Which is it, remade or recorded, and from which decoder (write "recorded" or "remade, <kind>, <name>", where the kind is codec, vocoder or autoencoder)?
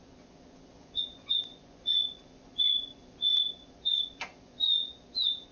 remade, vocoder, Vocos